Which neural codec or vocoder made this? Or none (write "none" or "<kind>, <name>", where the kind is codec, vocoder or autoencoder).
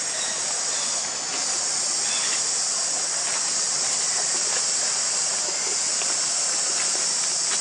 none